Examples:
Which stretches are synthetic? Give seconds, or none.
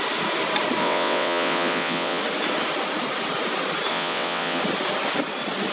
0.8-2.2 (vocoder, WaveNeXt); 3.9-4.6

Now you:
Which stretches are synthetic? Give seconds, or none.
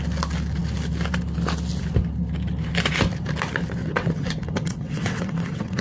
3.8-5.8 (vocoder, WaveNeXt)